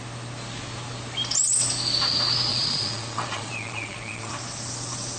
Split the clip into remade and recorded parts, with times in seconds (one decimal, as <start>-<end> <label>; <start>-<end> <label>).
0.0-2.5 recorded; 2.5-4.3 remade; 4.3-5.2 recorded